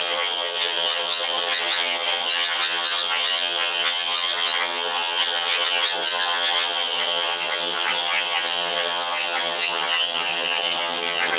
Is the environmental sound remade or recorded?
remade